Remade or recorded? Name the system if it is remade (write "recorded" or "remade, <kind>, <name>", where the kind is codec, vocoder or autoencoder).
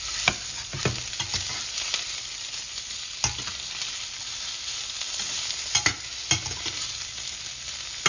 recorded